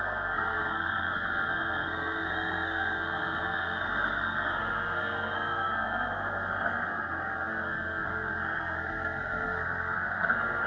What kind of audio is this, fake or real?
fake